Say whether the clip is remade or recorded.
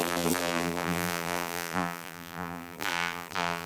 remade